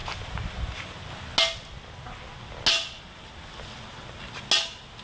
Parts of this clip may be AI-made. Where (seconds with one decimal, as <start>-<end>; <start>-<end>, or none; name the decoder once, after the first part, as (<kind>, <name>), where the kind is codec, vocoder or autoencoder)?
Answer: none